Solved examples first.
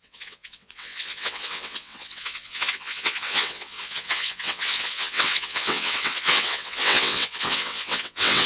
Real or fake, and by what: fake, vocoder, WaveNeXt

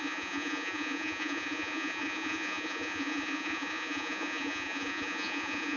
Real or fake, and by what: fake, vocoder, Vocos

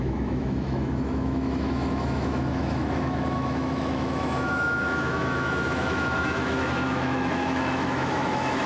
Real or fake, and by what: fake, autoencoder, DAC-VAE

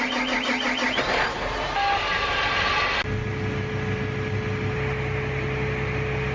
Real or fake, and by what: real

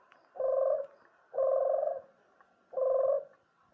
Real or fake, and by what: real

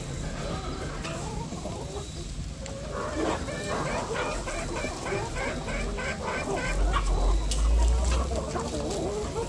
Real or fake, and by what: real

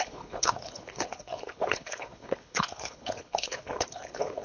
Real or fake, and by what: fake, codec, HILCodec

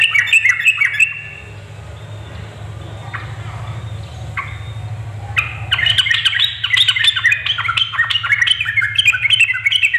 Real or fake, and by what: real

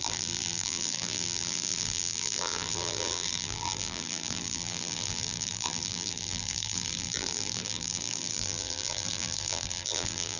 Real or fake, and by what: fake, vocoder, BigVGAN v2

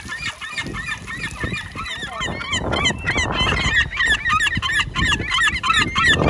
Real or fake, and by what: real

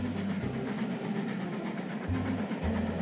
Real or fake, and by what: real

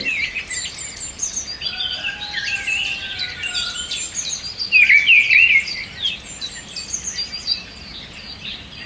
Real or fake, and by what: fake, vocoder, BigVGAN v2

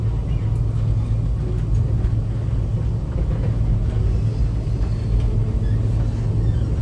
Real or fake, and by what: real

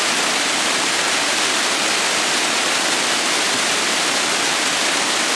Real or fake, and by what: real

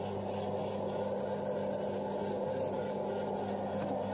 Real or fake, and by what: real